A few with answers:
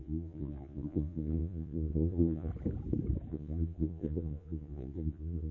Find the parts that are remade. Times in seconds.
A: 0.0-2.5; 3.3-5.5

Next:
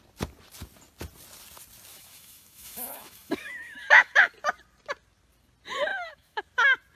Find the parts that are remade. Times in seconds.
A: 1.9-4.3; 5.9-6.4

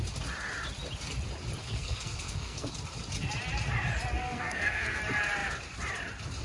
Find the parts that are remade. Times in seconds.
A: 1.6-2.7; 4.2-5.0

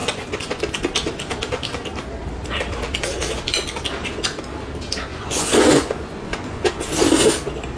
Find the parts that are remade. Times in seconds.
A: 0.0-0.6; 5.1-6.7

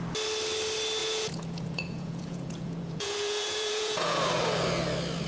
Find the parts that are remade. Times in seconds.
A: 1.0-4.2

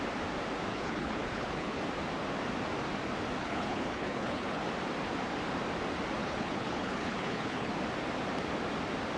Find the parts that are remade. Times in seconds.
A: 0.7-1.8; 3.4-4.6; 6.2-7.7